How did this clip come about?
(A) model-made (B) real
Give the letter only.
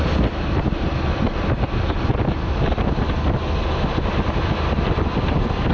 B